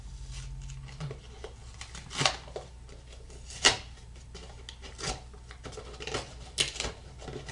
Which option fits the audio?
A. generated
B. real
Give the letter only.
B